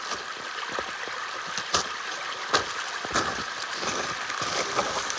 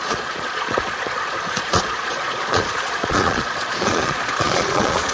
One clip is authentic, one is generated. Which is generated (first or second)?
second